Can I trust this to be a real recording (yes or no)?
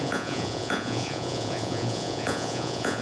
no